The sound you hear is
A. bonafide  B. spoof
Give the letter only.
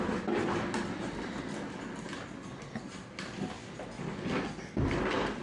A